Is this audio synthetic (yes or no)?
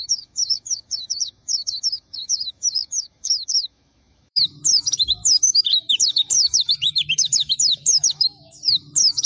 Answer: yes